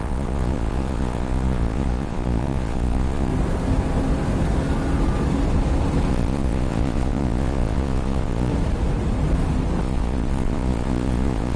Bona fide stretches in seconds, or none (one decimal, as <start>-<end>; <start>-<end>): 3.3-6.1; 8.5-9.8